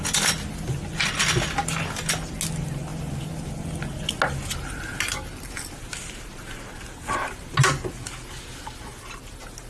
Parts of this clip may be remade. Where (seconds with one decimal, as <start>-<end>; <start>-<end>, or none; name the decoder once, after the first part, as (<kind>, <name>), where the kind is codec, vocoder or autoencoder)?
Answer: none